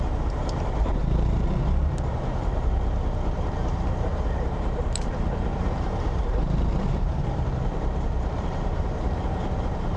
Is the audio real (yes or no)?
no